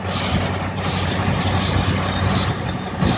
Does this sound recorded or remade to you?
recorded